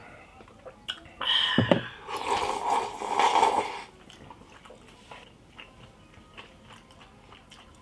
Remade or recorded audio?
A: recorded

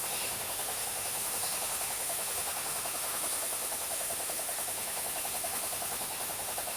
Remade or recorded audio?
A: remade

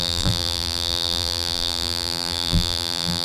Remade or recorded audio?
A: remade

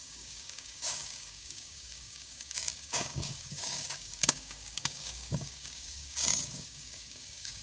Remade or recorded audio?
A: remade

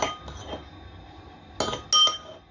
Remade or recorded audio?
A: recorded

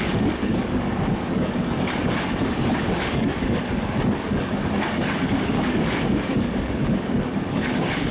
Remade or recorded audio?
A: remade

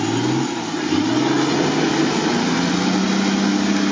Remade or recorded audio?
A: recorded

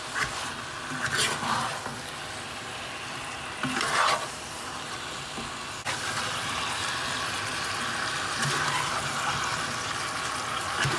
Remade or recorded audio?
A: recorded